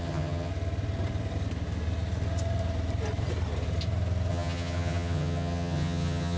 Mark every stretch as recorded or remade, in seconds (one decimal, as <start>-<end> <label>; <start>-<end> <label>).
0.0-0.5 remade; 0.5-4.3 recorded; 4.3-6.4 remade

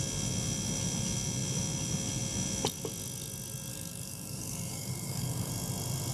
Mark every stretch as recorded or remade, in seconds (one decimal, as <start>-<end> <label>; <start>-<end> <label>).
0.0-3.7 recorded; 3.7-5.5 remade; 5.5-6.1 recorded

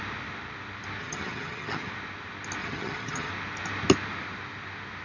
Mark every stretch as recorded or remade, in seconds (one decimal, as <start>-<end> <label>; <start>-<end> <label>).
0.0-1.0 recorded; 1.0-1.9 remade; 1.9-2.6 recorded; 2.6-3.3 remade; 3.3-5.0 recorded